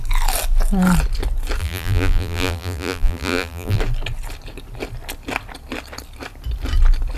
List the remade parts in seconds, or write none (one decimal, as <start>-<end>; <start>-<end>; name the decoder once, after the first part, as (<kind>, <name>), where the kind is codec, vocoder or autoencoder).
1.6-3.8 (vocoder, BigVGAN v2)